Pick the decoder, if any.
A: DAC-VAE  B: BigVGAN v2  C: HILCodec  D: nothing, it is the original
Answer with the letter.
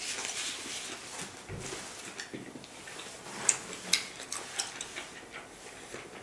D